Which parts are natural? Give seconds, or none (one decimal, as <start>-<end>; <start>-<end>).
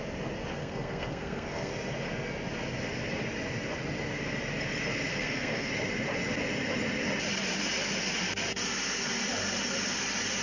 0.0-0.6; 1.7-5.1; 5.7-10.4